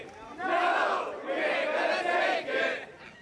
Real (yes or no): yes